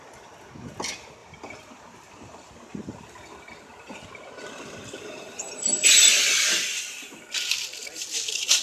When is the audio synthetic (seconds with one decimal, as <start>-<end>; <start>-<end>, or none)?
1.2-2.5; 5.8-7.2